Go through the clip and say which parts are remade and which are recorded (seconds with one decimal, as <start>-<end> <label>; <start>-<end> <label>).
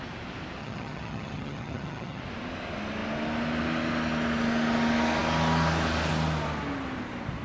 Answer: 0.0-0.6 recorded; 0.6-2.2 remade; 2.2-7.4 recorded